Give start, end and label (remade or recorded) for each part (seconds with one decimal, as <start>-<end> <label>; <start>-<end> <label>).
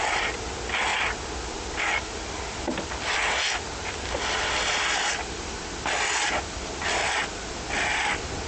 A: 0.0-8.5 recorded